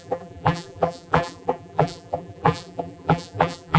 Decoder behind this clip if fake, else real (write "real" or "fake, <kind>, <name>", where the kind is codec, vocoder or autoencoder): fake, vocoder, BigVGAN v2